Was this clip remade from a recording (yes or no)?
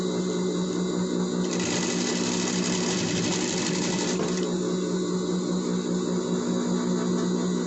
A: no